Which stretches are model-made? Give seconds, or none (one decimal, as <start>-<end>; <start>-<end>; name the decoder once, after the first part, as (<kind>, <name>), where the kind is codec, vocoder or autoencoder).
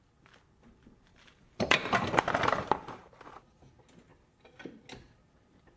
1.1-3.2 (vocoder, BigVGAN v2)